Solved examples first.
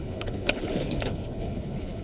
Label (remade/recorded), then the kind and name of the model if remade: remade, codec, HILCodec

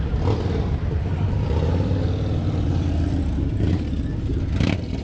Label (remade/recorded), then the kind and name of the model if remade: remade, vocoder, BigVGAN v2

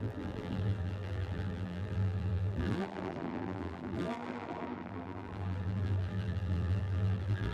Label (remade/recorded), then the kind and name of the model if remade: remade, vocoder, BigVGAN v2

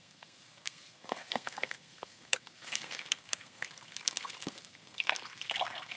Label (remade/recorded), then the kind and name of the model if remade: remade, codec, SNAC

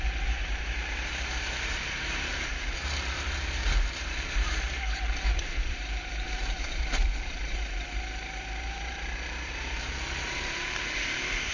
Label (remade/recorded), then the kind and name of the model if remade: remade, vocoder, BigVGAN v2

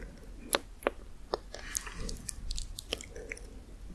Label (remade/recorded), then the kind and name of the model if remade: recorded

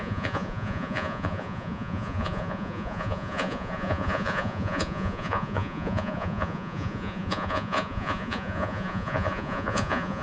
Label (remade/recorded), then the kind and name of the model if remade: remade, vocoder, Vocos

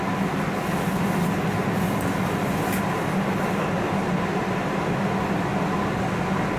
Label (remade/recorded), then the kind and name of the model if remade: recorded